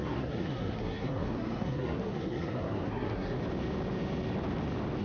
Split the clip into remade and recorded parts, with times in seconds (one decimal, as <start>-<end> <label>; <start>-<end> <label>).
0.0-3.4 remade; 3.4-5.0 recorded